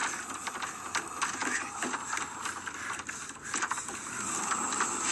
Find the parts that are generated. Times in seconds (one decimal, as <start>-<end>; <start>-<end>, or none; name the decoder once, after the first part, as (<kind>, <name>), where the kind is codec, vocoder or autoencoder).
none